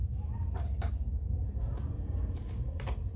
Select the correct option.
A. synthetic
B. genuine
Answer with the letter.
A